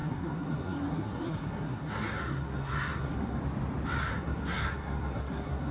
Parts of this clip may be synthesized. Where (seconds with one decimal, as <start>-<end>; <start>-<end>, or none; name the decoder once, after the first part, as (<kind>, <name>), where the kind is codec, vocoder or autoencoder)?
0.0-3.4 (codec, SNAC); 4.0-5.7